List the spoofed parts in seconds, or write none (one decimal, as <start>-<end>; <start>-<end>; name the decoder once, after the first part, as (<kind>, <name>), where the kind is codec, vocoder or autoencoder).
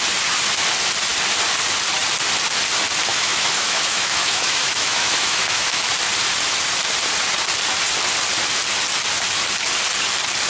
3.1-5.9 (autoencoder, DAC-VAE)